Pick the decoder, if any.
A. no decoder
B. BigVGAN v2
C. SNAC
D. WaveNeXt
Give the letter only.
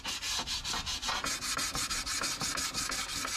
A